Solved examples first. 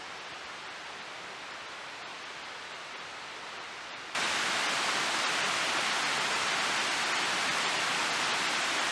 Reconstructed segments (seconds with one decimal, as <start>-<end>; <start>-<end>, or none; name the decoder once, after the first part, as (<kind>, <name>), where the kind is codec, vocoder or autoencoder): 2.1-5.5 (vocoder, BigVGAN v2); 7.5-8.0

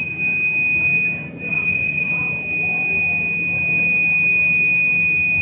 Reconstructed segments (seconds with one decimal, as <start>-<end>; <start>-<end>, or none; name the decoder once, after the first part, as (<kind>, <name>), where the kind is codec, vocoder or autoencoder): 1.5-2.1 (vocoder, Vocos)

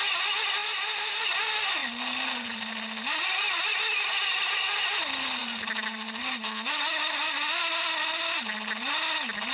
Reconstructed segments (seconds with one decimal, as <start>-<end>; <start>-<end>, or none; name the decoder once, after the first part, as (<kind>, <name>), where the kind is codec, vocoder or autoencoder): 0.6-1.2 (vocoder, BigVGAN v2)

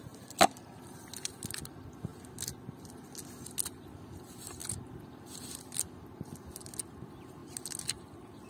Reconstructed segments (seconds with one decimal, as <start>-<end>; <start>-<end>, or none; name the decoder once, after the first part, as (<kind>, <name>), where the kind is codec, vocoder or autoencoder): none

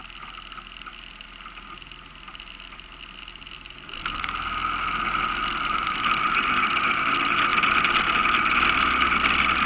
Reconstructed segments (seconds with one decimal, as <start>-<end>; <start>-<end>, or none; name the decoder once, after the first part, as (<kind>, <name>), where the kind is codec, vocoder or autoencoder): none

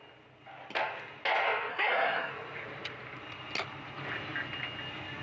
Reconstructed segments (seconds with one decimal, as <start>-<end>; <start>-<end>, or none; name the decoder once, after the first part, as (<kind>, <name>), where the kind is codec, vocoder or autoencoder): 1.7-2.3 (codec, SNAC)